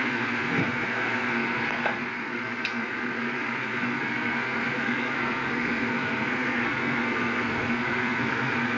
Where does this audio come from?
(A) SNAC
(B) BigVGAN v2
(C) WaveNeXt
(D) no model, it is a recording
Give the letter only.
A